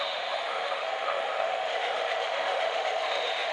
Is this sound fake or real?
fake